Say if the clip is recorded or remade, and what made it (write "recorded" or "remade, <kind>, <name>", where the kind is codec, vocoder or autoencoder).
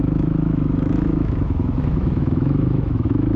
remade, autoencoder, DAC-VAE